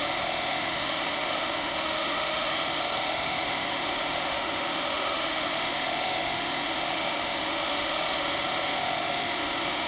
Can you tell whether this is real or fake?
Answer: fake